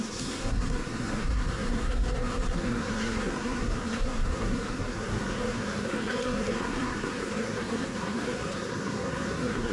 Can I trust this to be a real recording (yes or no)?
no